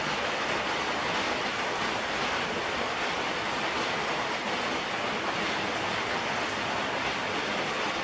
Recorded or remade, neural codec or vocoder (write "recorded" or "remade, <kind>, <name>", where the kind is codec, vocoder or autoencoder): recorded